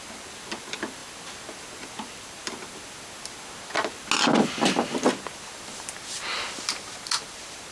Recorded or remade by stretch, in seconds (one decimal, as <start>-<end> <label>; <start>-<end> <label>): 0.0-7.7 recorded